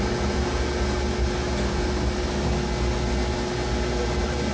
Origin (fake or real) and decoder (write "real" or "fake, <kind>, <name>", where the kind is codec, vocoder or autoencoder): real